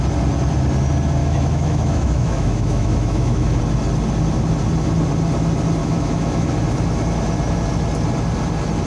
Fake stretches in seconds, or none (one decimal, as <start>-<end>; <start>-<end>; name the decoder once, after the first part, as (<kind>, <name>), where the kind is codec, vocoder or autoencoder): 1.2-3.6 (autoencoder, DAC-VAE); 5.8-6.5